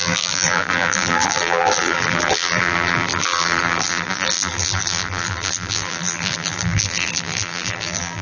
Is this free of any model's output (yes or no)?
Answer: no